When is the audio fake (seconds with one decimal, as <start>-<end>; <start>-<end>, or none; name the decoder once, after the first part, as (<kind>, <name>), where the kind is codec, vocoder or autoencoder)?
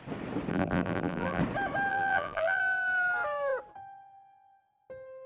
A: 0.5-1.4 (vocoder, BigVGAN v2); 1.9-2.6